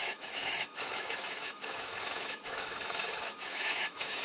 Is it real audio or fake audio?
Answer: fake